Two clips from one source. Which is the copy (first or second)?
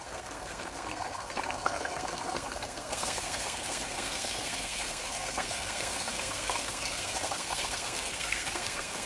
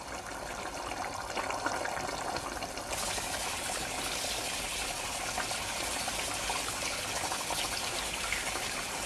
first